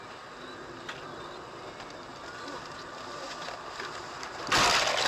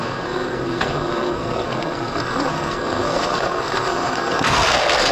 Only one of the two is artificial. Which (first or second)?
second